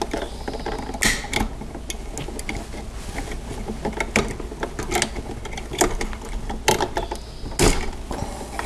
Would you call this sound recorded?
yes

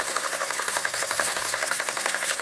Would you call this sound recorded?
no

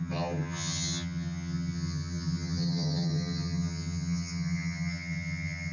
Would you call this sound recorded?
no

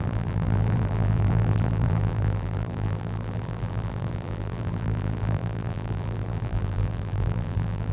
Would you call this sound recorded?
no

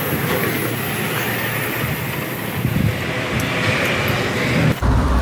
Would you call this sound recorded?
yes